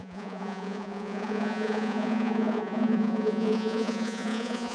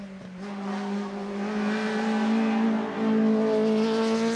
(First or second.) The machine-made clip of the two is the first